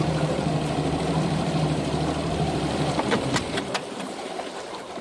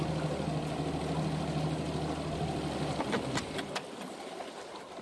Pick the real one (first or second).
second